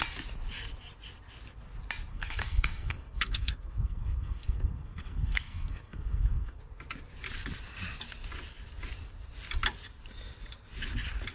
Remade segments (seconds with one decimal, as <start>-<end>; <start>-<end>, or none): 2.1-6.6